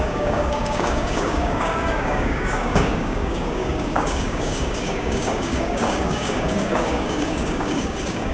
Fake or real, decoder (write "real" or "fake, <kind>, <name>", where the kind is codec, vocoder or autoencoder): fake, codec, DAC